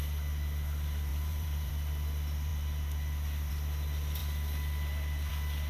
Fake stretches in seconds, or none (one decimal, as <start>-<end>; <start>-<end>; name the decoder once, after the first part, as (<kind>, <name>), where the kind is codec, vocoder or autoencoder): 1.1-1.7 (vocoder, BigVGAN v2)